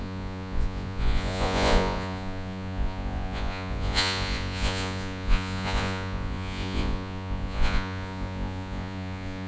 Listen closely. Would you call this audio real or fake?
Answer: fake